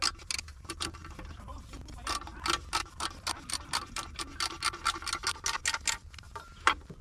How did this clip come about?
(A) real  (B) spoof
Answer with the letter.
A